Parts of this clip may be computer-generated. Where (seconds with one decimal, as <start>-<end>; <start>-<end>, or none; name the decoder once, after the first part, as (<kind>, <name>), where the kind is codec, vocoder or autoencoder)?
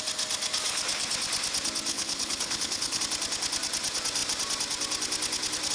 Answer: 1.9-3.0 (codec, HILCodec)